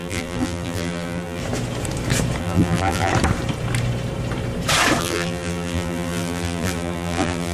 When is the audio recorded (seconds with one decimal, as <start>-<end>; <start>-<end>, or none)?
1.4-2.4; 3.1-5.0